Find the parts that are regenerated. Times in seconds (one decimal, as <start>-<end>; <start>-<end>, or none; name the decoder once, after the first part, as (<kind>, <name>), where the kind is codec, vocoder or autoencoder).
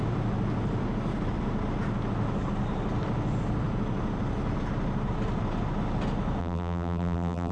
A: 6.4-7.5 (vocoder, BigVGAN v2)